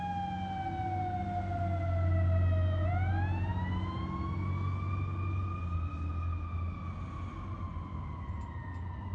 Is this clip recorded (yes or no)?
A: yes